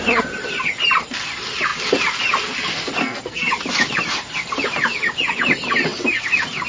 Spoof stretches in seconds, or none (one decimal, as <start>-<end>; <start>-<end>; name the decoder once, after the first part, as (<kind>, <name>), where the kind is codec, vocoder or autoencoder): 3.0-3.5 (codec, SNAC)